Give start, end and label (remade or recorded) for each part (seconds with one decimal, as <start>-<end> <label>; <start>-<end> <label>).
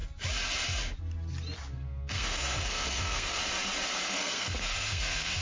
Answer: 0.0-1.7 recorded; 1.7-3.4 remade; 3.4-4.0 recorded; 4.0-5.4 remade